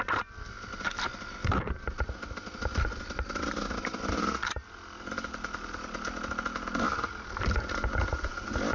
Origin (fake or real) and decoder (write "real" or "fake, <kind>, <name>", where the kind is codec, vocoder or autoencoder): real